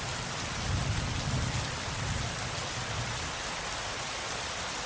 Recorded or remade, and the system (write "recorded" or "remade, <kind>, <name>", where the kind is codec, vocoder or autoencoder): recorded